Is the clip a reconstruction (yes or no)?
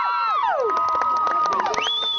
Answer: no